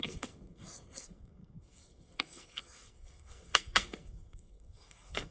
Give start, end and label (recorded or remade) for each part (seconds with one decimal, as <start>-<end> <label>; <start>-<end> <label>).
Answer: 0.0-5.3 remade